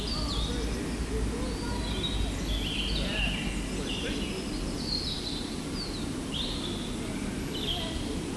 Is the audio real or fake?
real